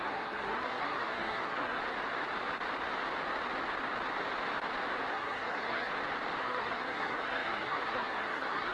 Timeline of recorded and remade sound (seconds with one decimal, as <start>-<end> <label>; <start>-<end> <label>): 0.0-1.8 remade; 1.8-5.1 recorded; 5.1-5.9 remade; 5.9-6.4 recorded; 6.4-8.7 remade